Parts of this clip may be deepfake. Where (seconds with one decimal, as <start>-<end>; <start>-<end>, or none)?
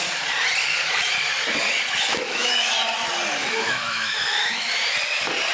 2.1-2.7; 3.4-4.7